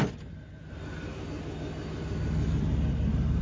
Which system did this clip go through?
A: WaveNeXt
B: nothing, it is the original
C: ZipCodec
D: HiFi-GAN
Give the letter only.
B